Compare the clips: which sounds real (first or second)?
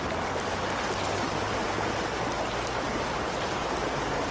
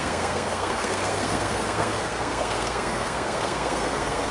first